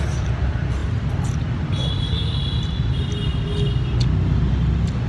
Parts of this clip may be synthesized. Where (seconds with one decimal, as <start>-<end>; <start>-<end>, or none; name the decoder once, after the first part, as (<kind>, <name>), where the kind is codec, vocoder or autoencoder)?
none